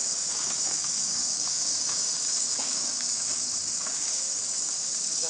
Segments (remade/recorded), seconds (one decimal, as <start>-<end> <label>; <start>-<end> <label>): 0.0-5.3 remade